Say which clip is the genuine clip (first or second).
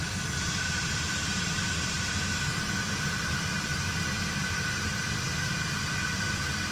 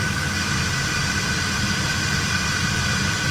second